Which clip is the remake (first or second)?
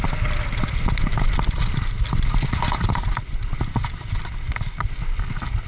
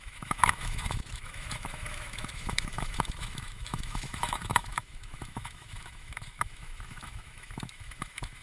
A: second